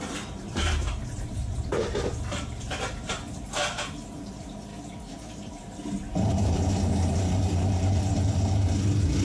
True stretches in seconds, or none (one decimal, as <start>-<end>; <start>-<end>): 2.1-2.7